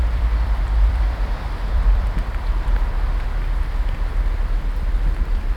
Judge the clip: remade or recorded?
remade